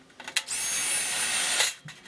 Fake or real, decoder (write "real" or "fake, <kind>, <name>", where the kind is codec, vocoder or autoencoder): real